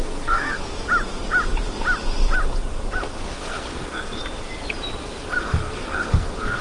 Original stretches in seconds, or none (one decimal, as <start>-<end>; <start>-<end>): 0.6-3.2; 4.2-5.4

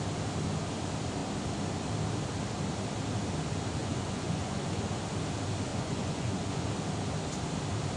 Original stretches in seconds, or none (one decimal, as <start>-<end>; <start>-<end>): 0.0-3.8; 4.8-5.7; 6.7-8.0

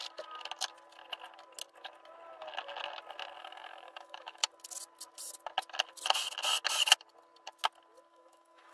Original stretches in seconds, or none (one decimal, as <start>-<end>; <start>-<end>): 0.0-3.4; 4.4-8.1

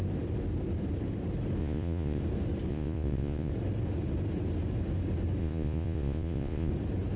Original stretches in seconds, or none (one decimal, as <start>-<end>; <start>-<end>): 0.0-1.6; 2.2-2.7; 3.5-5.4; 6.7-7.2

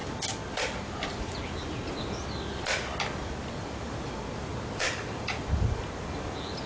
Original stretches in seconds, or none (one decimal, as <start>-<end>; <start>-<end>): 0.0-6.7

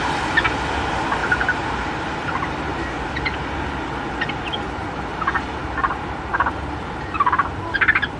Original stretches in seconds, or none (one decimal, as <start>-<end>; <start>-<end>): 0.0-1.2; 2.8-5.6; 6.7-8.2

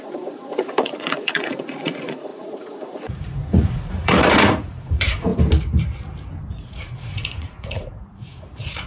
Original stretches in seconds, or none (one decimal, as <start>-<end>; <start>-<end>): 5.3-6.5

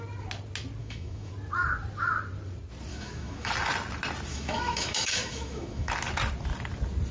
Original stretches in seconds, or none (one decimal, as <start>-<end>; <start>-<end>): 0.0-0.8; 1.3-2.9; 3.5-4.3; 5.9-7.1